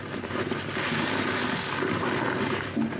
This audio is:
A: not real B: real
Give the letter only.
B